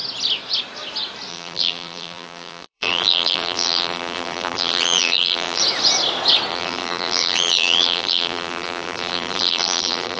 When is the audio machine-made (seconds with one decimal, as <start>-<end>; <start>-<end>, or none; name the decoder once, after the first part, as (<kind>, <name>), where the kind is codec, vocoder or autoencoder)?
1.3-5.6 (vocoder, BigVGAN v2); 6.5-10.2